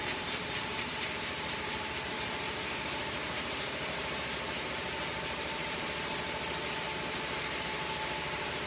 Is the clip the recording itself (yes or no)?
no